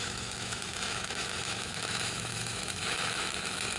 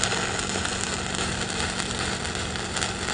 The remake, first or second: first